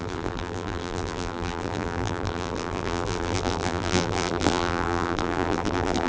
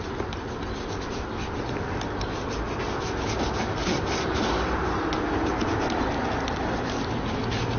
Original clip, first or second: second